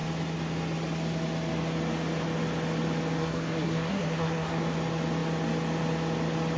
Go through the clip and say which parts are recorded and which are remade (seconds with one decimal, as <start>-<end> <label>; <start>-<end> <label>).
0.0-3.2 recorded; 3.2-4.6 remade; 4.6-6.6 recorded